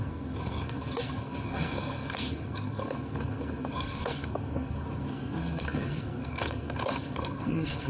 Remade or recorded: remade